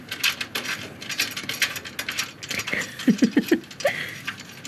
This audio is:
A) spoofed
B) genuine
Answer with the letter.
B